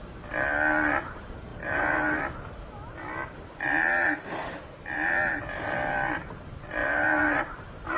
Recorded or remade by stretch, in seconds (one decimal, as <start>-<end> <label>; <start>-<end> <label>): 0.0-1.5 recorded; 1.5-6.3 remade; 6.3-6.8 recorded; 6.8-8.0 remade